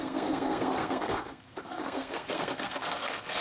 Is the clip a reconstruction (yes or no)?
yes